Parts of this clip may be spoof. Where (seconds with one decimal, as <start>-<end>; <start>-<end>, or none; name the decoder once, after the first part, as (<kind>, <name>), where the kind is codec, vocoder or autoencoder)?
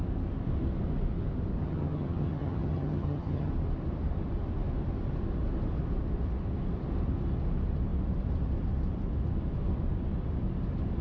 1.6-3.5 (vocoder, HiFi-GAN)